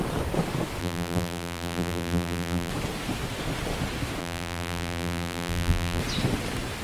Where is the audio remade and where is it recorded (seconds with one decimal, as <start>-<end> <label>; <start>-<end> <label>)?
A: 0.0-0.8 recorded; 0.8-2.7 remade; 2.7-4.2 recorded; 4.2-6.0 remade; 6.0-6.8 recorded